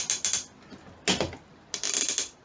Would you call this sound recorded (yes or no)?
yes